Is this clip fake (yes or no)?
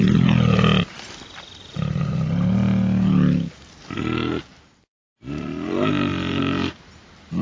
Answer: no